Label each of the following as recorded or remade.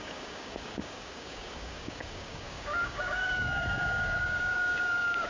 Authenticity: remade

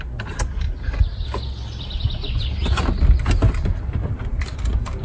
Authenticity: recorded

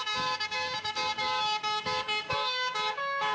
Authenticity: remade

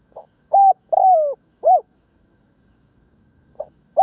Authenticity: remade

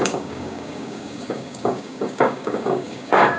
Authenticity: remade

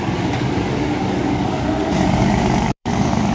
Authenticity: remade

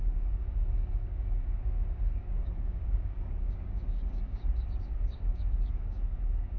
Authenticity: remade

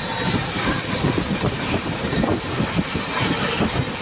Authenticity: recorded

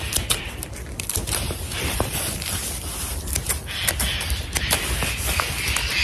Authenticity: recorded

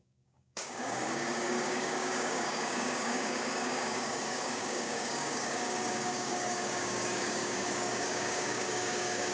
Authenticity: remade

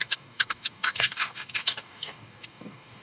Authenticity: remade